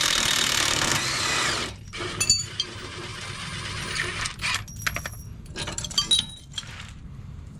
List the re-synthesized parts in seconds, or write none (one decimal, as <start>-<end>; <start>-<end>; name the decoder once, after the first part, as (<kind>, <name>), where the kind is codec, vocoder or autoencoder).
0.0-3.1 (vocoder, BigVGAN v2); 6.5-7.6